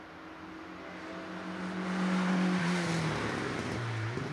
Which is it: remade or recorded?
recorded